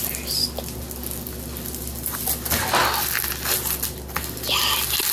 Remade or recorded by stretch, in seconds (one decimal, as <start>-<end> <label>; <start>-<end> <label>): 0.0-5.1 recorded